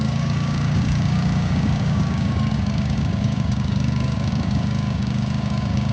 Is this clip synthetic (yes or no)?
yes